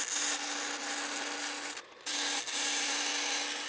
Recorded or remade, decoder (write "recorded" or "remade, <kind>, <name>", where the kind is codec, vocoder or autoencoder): recorded